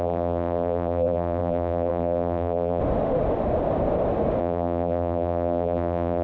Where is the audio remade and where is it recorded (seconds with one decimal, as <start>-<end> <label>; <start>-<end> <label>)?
0.0-2.8 remade; 2.8-4.4 recorded; 4.4-6.2 remade